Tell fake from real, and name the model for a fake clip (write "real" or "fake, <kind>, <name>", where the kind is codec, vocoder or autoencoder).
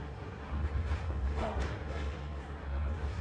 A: fake, codec, SNAC